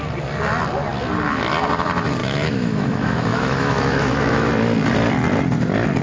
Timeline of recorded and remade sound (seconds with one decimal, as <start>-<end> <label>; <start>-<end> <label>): 0.0-2.2 recorded; 2.2-4.5 remade; 4.5-6.0 recorded